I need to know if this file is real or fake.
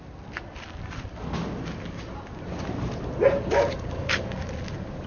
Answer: real